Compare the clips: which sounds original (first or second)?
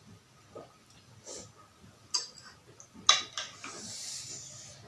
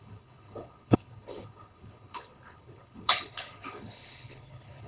first